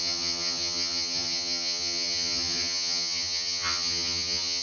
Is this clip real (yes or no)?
no